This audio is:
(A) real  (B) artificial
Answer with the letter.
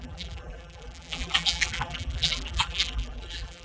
B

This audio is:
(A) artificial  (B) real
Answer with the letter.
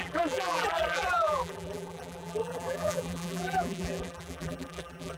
A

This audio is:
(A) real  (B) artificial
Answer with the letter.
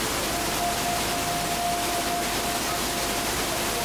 A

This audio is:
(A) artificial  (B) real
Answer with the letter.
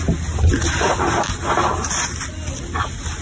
B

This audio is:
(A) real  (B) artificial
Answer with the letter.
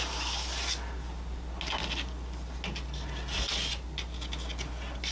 A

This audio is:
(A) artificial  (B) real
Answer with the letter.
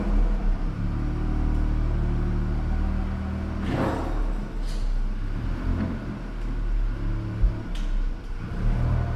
B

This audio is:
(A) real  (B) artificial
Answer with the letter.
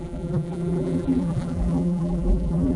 B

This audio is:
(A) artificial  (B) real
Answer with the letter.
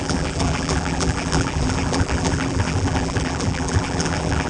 A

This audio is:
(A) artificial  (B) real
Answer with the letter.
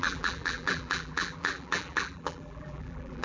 A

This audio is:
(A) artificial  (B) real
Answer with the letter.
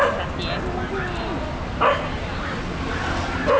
B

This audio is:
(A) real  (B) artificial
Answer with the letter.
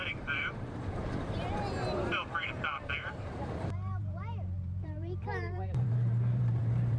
B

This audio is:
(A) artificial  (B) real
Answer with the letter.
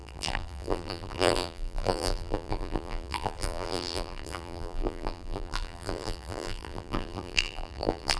A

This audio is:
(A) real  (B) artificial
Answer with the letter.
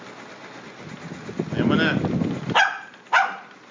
A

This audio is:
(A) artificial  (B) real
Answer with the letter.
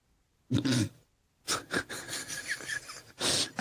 B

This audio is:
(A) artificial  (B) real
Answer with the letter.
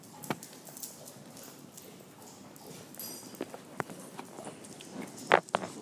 B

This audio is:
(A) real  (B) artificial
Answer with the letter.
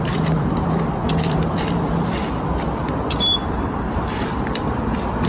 B